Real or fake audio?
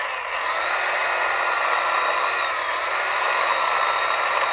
real